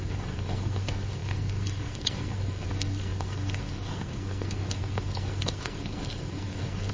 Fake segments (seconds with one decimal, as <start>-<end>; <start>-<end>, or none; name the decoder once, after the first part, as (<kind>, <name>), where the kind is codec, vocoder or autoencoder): 0.0-6.9 (codec, SNAC)